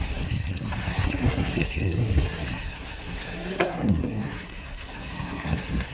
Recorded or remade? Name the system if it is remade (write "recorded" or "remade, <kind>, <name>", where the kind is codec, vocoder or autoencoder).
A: remade, codec, SNAC